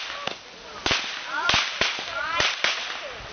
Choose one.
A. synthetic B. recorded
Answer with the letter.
B